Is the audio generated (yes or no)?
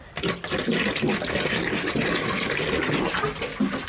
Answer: no